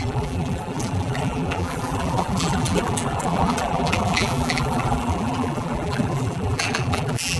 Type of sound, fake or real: fake